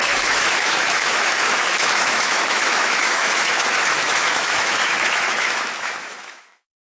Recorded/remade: remade